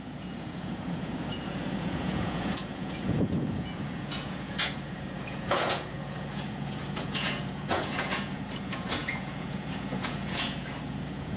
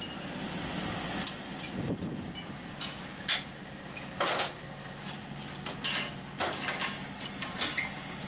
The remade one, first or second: first